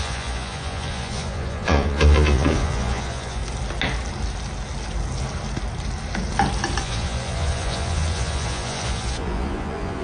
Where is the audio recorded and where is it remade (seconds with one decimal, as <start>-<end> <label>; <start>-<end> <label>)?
0.0-3.4 remade; 3.4-6.8 recorded; 6.8-10.0 remade

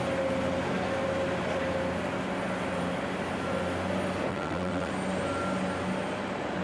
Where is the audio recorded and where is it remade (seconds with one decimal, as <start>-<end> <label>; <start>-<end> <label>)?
0.0-4.3 recorded; 4.3-4.9 remade; 4.9-6.6 recorded

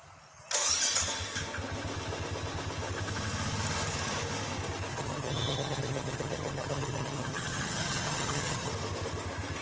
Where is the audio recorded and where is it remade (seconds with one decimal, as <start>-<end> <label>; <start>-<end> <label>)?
0.0-4.9 recorded; 4.9-8.7 remade; 8.7-9.6 recorded

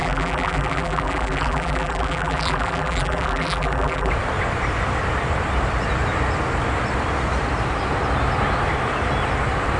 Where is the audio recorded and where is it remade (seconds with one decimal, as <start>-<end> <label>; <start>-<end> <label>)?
0.0-4.1 remade; 4.1-9.8 recorded

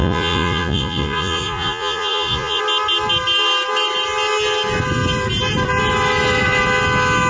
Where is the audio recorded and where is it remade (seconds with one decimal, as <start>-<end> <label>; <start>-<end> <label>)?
0.0-2.6 remade; 2.6-7.3 recorded